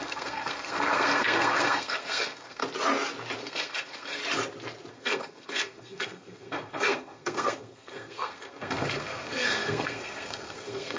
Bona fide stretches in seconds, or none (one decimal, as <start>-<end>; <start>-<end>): 2.6-3.4; 4.2-4.9